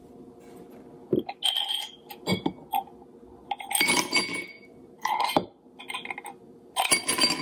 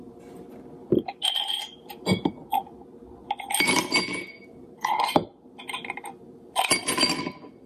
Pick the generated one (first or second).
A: second